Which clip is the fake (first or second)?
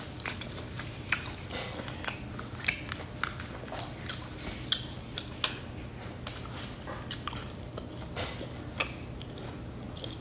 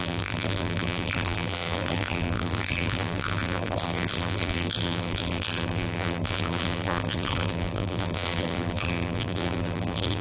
second